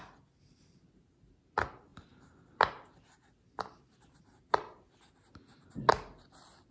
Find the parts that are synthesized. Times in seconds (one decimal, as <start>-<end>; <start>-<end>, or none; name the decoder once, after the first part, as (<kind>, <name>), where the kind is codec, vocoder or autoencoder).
none